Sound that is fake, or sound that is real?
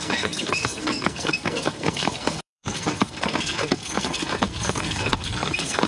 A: fake